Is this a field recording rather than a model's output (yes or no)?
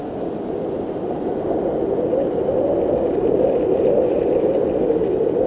yes